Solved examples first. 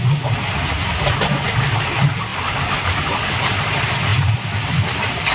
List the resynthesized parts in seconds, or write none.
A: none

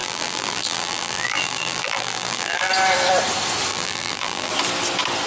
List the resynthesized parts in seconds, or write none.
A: 0.0-2.7 (vocoder, BigVGAN v2); 3.7-4.5

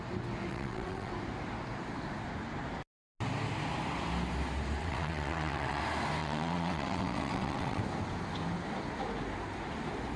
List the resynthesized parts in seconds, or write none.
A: 0.5-1.1 (vocoder, WaveNeXt); 4.8-5.8; 6.2-7.8

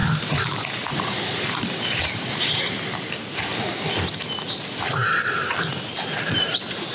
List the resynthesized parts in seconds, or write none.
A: 0.0-2.4 (vocoder, BigVGAN v2); 5.0-5.6

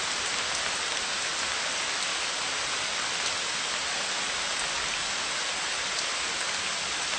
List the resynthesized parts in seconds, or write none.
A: none

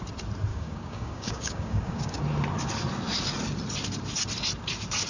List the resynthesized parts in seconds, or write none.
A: 0.5-2.2 (codec, DAC)

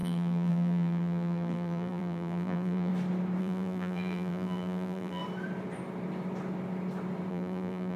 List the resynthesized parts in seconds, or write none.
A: 0.0-2.9 (vocoder, BigVGAN v2); 3.4-5.2; 7.3-8.0